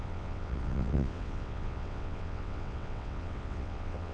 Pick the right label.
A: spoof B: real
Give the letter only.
A